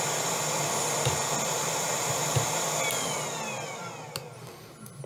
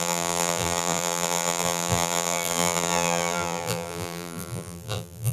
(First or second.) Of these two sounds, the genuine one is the first